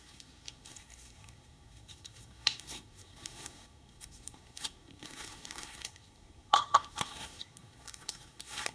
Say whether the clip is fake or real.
fake